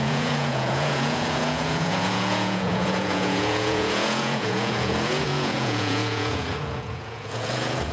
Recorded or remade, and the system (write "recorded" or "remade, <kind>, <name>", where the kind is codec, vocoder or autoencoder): remade, vocoder, Vocos